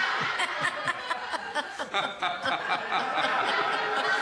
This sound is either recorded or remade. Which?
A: recorded